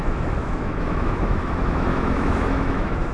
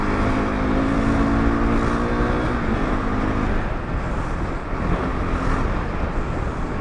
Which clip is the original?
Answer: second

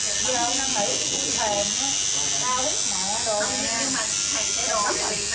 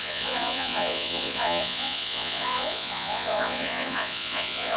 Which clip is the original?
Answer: first